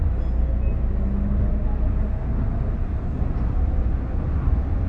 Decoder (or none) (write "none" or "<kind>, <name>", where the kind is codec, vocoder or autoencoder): none